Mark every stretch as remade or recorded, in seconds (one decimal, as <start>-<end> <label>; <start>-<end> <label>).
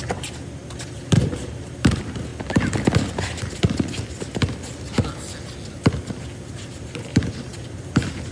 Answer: 0.0-0.6 remade; 0.6-1.6 recorded; 1.6-2.3 remade; 2.3-6.5 recorded; 6.5-8.3 remade